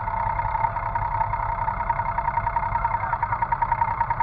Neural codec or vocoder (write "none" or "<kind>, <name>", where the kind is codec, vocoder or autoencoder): none